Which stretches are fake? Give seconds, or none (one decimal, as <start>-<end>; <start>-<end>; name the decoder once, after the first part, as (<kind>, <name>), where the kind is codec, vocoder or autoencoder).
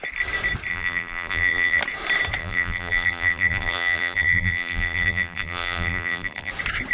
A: 0.7-1.8 (vocoder, BigVGAN v2); 2.4-6.5